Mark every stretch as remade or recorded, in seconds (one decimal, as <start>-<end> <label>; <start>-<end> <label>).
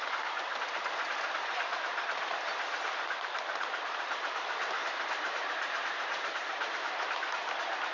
0.0-2.5 recorded; 2.5-7.2 remade; 7.2-7.9 recorded